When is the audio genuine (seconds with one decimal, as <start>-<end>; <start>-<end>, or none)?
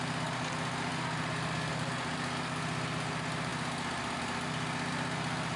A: 0.0-5.6